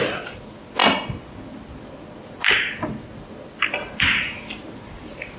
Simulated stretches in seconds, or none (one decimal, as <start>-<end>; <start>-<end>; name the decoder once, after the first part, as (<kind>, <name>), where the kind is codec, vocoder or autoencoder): none